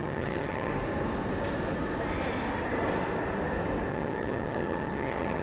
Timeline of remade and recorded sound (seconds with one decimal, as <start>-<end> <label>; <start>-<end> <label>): 0.0-0.7 remade; 0.7-3.9 recorded; 3.9-5.4 remade